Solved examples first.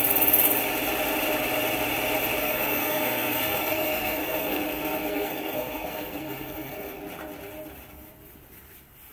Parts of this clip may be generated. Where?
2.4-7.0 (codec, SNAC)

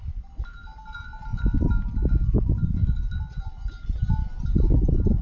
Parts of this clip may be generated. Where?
none

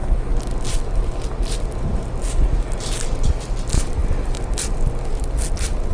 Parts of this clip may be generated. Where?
none

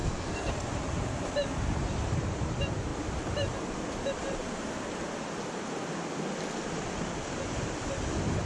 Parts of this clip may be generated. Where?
0.0-0.5 (codec, SNAC)

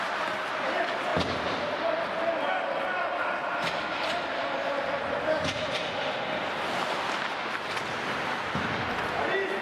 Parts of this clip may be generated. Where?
none

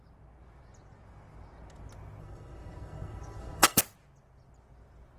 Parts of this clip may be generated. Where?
2.2-3.8 (codec, SNAC)

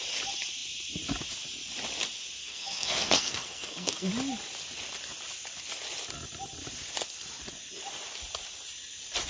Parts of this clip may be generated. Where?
2.4-4.1 (codec, SNAC)